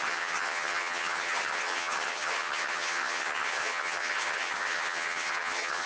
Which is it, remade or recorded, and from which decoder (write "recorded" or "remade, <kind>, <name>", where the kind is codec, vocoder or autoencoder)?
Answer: remade, vocoder, HiFi-GAN